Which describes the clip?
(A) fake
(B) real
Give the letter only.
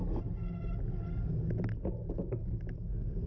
B